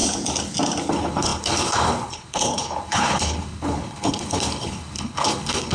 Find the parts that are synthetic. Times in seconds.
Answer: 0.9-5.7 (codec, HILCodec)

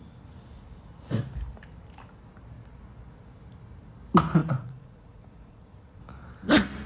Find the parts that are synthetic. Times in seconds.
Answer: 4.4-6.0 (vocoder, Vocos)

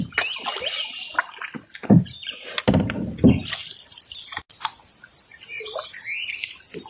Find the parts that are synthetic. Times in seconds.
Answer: 1.8-3.0 (vocoder, BigVGAN v2)

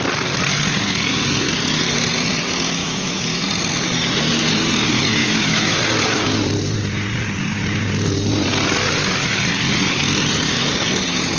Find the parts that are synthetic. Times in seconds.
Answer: 2.8-3.4 (autoencoder, DAC-VAE); 5.2-5.8

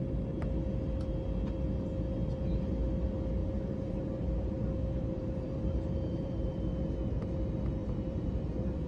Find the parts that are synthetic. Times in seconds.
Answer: 3.4-6.7 (vocoder, BigVGAN v2); 7.8-8.9